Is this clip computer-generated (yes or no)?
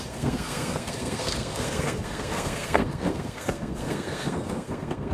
yes